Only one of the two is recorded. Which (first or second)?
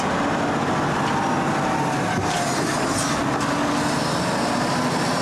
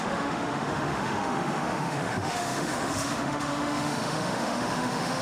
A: first